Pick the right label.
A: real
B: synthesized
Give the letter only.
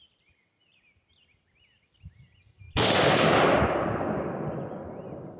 A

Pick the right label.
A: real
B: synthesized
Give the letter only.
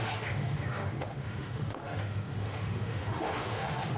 B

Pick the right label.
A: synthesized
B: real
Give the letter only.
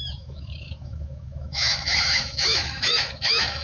A